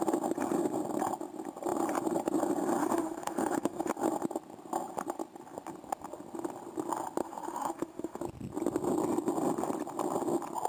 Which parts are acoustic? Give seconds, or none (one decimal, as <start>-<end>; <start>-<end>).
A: 0.0-2.8; 3.9-7.2; 8.2-10.7